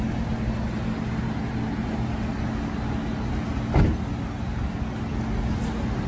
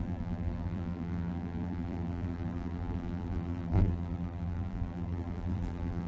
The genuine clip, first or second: first